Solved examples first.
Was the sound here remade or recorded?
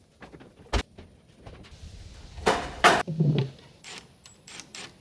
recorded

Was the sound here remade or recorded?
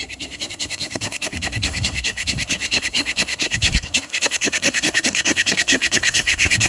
remade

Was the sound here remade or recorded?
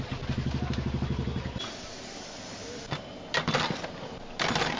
recorded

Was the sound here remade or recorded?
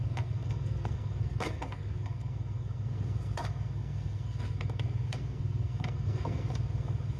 remade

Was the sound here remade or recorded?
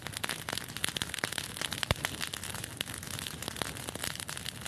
recorded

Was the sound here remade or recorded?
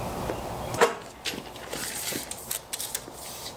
recorded